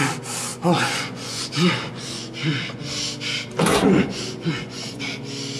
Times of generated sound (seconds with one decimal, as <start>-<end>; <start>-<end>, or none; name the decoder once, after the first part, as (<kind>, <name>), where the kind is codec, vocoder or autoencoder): 0.5-2.9 (vocoder, Vocos); 3.7-5.0